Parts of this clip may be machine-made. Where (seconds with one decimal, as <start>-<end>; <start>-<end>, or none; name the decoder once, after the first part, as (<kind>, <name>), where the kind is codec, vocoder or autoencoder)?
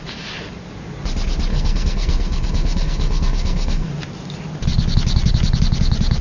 1.5-3.9 (codec, SNAC)